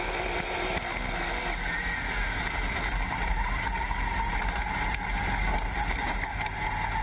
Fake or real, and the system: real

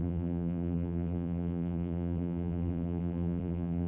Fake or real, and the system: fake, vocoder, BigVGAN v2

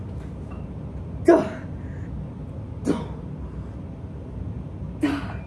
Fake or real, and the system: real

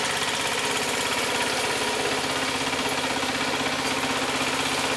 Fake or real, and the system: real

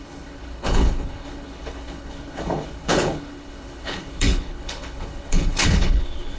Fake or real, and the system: fake, codec, HILCodec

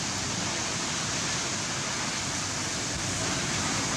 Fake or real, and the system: real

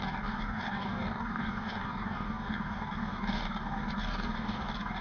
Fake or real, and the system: fake, codec, DAC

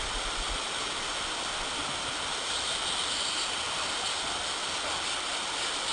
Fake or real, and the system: real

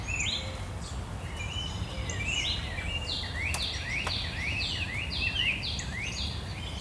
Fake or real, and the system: real